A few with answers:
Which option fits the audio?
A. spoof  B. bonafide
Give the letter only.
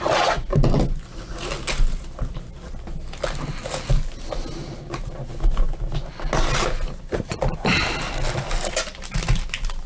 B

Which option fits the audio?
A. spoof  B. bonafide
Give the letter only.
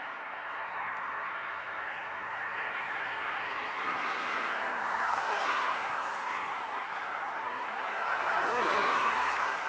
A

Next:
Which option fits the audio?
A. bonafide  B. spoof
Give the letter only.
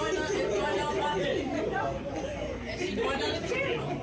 A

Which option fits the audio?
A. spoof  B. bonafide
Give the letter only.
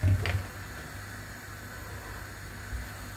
B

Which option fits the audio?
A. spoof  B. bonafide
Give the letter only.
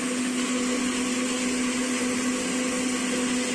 B